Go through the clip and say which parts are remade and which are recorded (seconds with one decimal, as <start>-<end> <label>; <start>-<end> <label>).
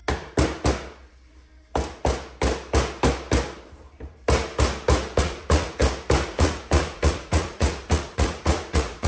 0.0-5.2 recorded; 5.2-5.8 remade; 5.8-6.3 recorded; 6.3-9.1 remade